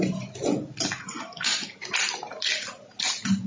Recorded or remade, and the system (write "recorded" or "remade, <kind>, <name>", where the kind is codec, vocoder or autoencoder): recorded